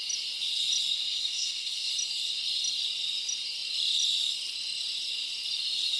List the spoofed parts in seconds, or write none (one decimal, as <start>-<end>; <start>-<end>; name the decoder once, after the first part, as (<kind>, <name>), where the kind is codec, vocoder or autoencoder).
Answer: 1.1-1.9 (codec, SNAC)